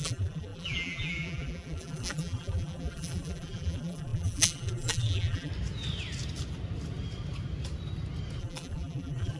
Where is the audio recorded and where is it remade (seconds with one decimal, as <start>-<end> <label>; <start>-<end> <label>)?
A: 0.0-5.5 remade; 5.5-8.4 recorded; 8.4-9.4 remade